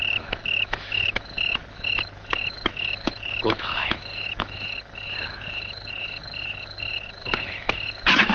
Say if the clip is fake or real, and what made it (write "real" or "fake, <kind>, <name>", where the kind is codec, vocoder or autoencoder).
fake, autoencoder, DAC-VAE